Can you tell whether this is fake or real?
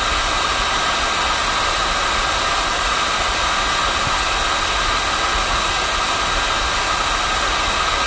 real